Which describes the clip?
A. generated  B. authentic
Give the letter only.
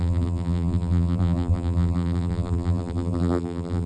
A